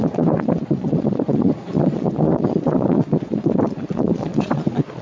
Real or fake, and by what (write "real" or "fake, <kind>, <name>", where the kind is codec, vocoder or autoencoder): fake, vocoder, Vocos